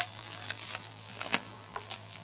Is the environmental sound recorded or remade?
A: remade